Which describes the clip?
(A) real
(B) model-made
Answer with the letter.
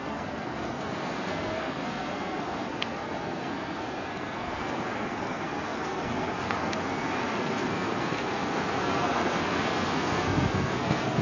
B